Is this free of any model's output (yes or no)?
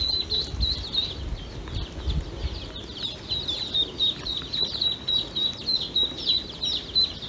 yes